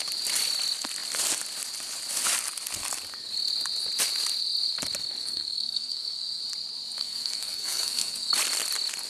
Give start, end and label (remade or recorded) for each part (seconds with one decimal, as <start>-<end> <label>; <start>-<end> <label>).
0.0-5.2 recorded; 5.2-6.4 remade; 6.4-7.0 recorded; 7.0-8.3 remade; 8.3-9.1 recorded